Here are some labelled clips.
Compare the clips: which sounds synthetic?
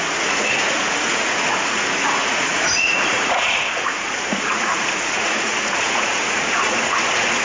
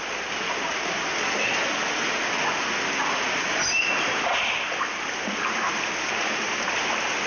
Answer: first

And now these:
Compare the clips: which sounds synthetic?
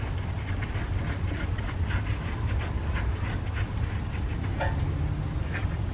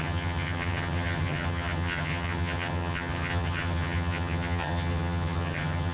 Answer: second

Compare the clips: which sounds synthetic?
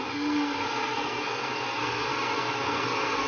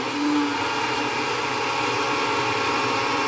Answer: first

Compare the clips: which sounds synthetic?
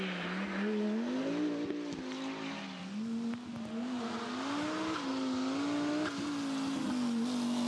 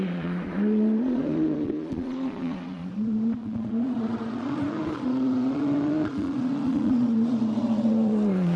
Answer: second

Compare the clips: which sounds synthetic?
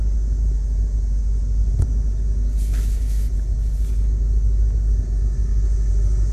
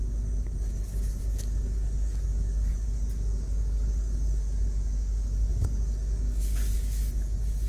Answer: second